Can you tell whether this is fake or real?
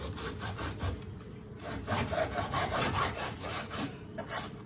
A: fake